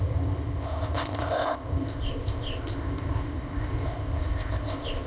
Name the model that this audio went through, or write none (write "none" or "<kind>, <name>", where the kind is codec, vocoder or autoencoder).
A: codec, ZipCodec